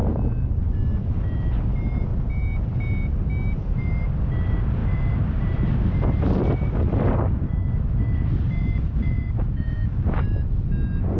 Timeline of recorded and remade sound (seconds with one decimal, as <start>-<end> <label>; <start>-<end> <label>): 0.0-0.9 recorded; 0.9-2.1 remade; 2.1-3.5 recorded; 3.5-11.2 remade